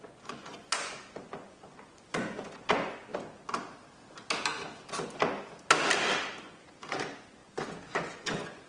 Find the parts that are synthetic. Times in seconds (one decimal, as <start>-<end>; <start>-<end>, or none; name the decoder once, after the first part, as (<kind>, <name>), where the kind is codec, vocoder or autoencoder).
0.0-3.1 (vocoder, Vocos); 6.4-8.7